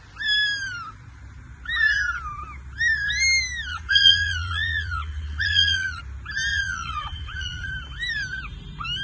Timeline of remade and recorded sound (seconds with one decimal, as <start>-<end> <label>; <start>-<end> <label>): 0.0-3.7 recorded; 3.7-6.0 remade; 6.0-6.5 recorded; 6.5-7.7 remade; 7.7-9.0 recorded

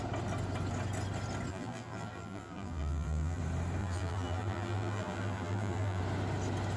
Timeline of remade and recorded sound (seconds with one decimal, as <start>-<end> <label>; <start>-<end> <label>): 0.0-1.5 recorded; 1.5-3.4 remade; 3.4-3.8 recorded; 3.8-6.0 remade; 6.0-6.8 recorded

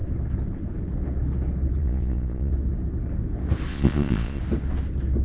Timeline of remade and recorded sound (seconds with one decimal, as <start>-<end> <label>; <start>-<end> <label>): 0.0-1.8 recorded; 1.8-2.5 remade; 2.5-3.7 recorded; 3.7-4.4 remade; 4.4-5.2 recorded

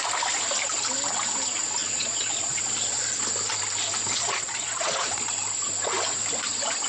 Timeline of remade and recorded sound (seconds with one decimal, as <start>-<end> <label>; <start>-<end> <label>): 0.0-1.8 recorded; 1.8-3.2 remade; 3.2-4.1 recorded; 4.1-5.3 remade; 5.3-6.9 recorded

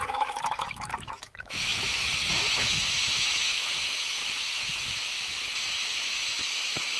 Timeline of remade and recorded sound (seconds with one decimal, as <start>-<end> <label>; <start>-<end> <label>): 0.0-7.0 remade

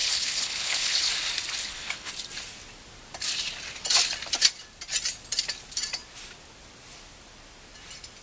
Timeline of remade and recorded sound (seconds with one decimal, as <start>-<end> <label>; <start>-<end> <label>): 0.0-1.1 remade; 1.1-1.6 recorded; 1.6-2.1 remade; 2.1-8.2 recorded

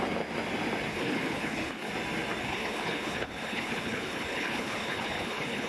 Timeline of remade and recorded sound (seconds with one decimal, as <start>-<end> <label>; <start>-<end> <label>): 0.0-0.9 recorded; 0.9-1.9 remade; 1.9-2.4 recorded; 2.4-5.7 remade